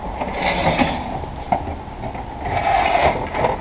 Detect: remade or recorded recorded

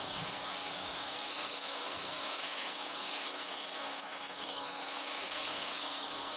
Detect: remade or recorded remade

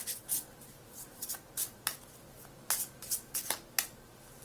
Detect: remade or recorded recorded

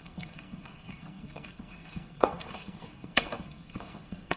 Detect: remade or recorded remade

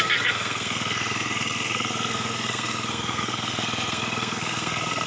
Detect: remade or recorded remade